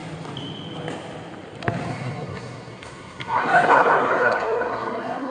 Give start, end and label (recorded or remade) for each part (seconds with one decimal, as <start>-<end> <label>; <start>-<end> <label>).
0.0-1.9 recorded; 1.9-5.3 remade